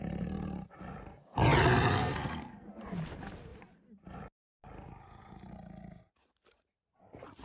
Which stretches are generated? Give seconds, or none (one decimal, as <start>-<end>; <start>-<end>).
2.0-2.7